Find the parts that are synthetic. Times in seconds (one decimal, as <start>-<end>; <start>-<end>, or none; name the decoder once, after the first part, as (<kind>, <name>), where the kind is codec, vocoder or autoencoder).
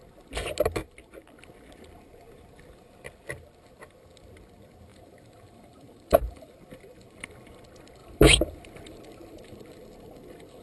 4.9-6.5 (vocoder, BigVGAN v2); 8.0-8.6